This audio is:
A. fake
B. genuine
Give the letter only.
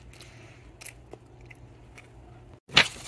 B